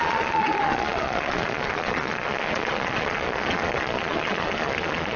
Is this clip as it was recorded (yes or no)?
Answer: no